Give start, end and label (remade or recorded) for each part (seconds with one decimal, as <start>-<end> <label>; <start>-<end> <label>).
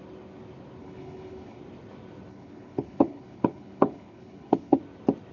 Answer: 0.0-0.8 recorded; 0.8-1.6 remade; 1.6-2.3 recorded; 2.3-4.8 remade; 4.8-5.3 recorded